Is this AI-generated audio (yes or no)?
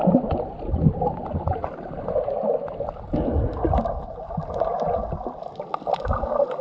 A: no